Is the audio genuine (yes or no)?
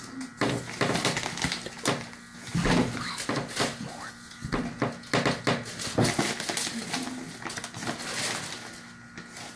yes